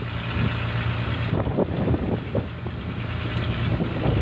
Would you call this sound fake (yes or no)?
no